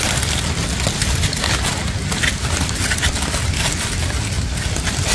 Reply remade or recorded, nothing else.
recorded